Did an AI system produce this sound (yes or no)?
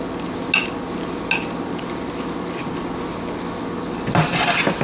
no